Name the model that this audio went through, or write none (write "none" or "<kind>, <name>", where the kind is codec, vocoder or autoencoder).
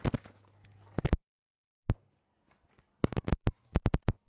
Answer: none